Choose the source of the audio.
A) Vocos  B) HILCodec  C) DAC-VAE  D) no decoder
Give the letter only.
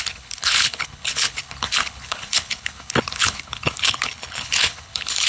B